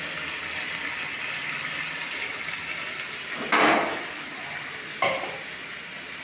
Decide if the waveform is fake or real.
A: real